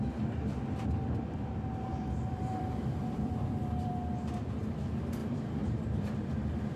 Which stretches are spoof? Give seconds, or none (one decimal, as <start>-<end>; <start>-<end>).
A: 1.9-3.9; 5.2-6.8